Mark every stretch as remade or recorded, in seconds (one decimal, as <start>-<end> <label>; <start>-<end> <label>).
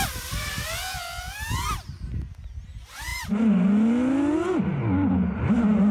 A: 0.0-5.9 recorded